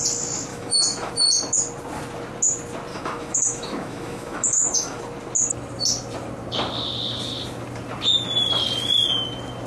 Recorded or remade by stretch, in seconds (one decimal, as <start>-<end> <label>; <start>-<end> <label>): 0.0-0.5 recorded; 0.5-1.1 remade; 1.1-2.9 recorded; 2.9-5.0 remade; 5.0-9.7 recorded